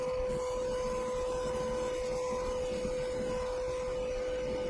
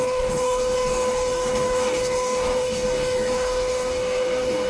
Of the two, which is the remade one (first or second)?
second